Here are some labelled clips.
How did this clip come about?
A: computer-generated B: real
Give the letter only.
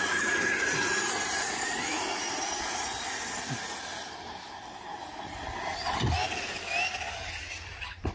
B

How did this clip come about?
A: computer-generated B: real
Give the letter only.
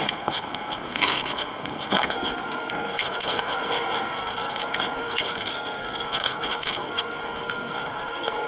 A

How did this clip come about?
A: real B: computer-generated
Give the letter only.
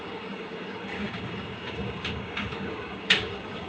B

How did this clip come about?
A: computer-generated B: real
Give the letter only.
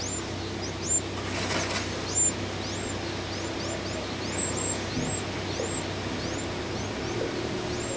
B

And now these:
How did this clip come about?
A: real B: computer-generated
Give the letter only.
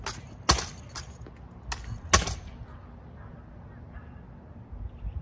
A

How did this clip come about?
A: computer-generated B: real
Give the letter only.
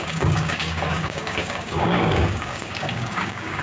A